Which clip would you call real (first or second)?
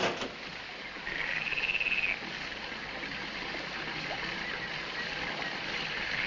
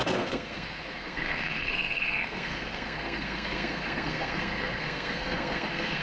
first